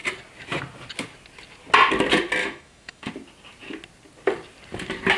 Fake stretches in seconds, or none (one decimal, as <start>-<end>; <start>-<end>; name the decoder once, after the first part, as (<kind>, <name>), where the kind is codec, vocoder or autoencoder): 2.4-3.1 (autoencoder, DAC-VAE)